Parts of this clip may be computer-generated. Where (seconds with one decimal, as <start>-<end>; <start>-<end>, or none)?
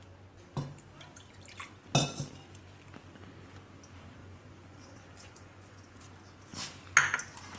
4.2-6.0